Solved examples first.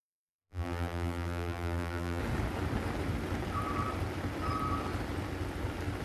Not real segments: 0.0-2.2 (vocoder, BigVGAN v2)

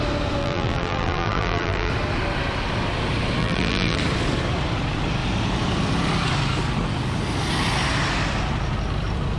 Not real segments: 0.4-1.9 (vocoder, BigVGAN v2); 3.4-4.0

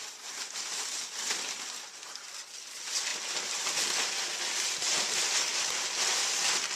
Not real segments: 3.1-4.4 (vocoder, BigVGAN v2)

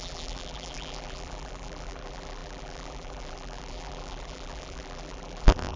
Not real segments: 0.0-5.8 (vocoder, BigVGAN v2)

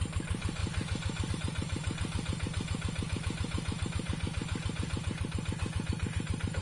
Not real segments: 0.0-0.6 (vocoder, BigVGAN v2); 1.3-1.8; 3.9-4.4; 5.9-6.6